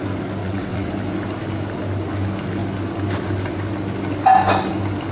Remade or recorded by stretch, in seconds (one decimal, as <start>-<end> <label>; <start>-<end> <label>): 0.0-0.4 recorded; 0.4-0.9 remade; 0.9-5.1 recorded

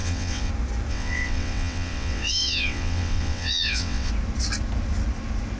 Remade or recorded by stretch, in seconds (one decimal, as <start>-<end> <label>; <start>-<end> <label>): 0.0-0.5 remade; 0.5-0.9 recorded; 0.9-4.1 remade; 4.1-5.6 recorded

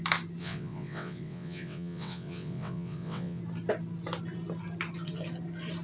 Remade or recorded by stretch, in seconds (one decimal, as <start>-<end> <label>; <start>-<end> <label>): 0.0-0.4 recorded; 0.4-3.4 remade; 3.4-5.8 recorded

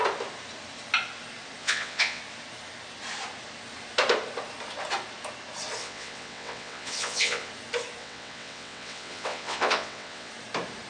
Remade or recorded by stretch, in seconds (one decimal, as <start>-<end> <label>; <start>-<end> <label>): 0.0-1.6 recorded; 1.6-2.2 remade; 2.2-5.8 recorded; 5.8-7.5 remade; 7.5-8.0 recorded; 8.0-10.3 remade; 10.3-10.9 recorded

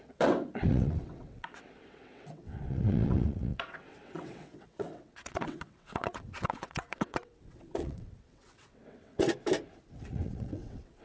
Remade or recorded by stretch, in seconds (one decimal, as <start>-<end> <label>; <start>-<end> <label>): 0.0-9.3 remade; 9.3-9.9 recorded; 9.9-11.0 remade